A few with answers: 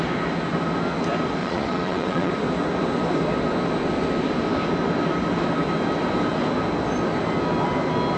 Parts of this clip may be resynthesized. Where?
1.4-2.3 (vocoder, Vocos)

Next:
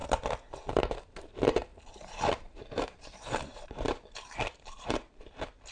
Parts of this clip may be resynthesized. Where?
1.7-5.1 (vocoder, BigVGAN v2)

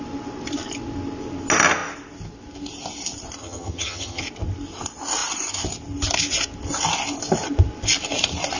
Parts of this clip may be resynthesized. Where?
3.4-4.2 (vocoder, HiFi-GAN)